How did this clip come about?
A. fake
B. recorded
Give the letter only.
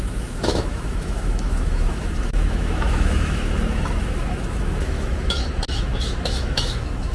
A